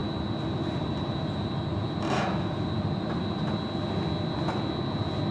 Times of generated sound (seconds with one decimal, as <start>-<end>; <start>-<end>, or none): 0.0-3.2

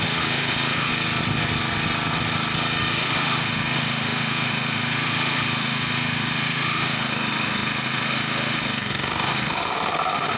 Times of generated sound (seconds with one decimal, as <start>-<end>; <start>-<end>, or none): 0.0-0.9; 2.9-10.4

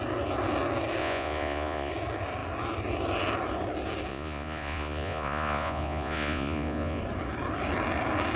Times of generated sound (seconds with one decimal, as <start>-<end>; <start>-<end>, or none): 1.0-1.9; 4.1-7.0

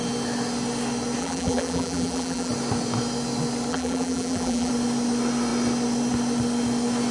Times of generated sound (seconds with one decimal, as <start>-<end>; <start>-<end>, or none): 1.2-2.5; 3.7-4.7

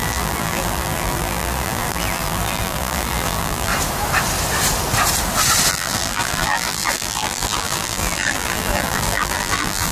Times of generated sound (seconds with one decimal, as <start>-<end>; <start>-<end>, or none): 0.0-3.7; 5.7-9.9

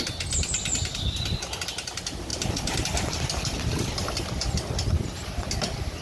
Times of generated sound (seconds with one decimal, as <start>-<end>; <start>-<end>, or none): none

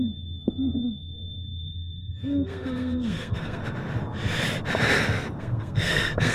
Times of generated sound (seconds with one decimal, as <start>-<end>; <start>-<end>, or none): 0.0-3.6; 5.4-6.3